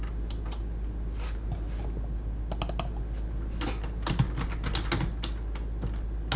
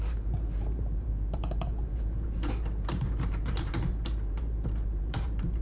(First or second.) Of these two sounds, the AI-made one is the second